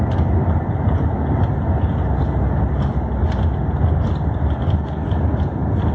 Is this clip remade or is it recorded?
recorded